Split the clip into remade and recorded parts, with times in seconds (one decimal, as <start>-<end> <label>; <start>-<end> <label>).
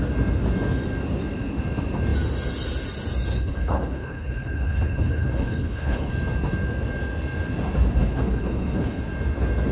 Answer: 0.0-3.3 recorded; 3.3-6.1 remade; 6.1-8.0 recorded; 8.0-9.0 remade; 9.0-9.7 recorded